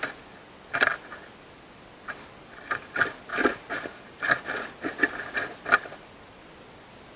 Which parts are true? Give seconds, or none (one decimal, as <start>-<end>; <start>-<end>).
0.0-3.3; 5.0-5.5; 6.1-7.2